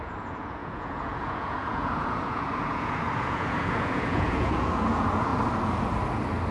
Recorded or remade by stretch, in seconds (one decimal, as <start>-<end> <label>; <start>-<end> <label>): 0.0-5.3 remade; 5.3-6.5 recorded